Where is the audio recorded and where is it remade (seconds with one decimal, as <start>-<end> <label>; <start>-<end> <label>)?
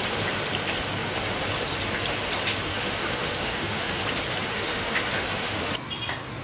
0.0-2.7 recorded; 2.7-4.0 remade; 4.0-4.5 recorded; 4.5-5.7 remade; 5.7-6.4 recorded